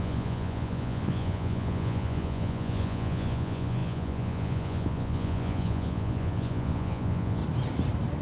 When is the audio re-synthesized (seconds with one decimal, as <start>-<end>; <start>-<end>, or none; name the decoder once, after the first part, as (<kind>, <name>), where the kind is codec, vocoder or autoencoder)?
0.0-7.4 (vocoder, Vocos)